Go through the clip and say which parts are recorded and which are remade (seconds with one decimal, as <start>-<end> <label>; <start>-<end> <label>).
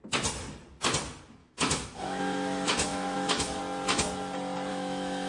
0.0-1.4 recorded; 1.4-3.6 remade; 3.6-4.7 recorded; 4.7-5.3 remade